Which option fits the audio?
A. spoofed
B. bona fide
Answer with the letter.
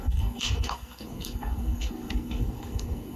A